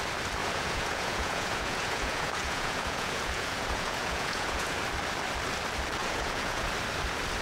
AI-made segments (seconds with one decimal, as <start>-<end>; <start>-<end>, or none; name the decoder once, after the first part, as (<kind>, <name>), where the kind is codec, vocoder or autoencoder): 0.4-4.8 (vocoder, Vocos); 6.0-6.7